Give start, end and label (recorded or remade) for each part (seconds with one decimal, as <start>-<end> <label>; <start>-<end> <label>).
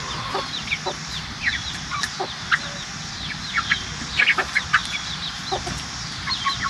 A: 0.0-4.8 recorded; 4.8-6.7 remade